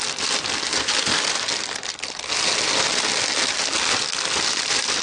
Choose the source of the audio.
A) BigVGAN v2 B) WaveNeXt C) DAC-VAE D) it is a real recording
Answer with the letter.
D